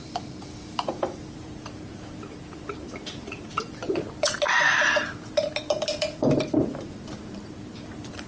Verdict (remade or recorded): remade